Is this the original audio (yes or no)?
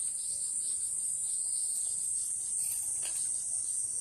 yes